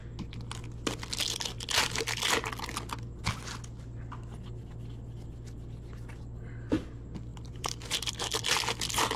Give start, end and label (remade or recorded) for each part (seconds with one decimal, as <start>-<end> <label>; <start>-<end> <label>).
0.0-7.3 recorded; 7.3-8.1 remade; 8.1-9.2 recorded